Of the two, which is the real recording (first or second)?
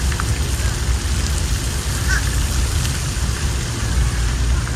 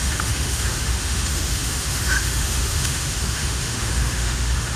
first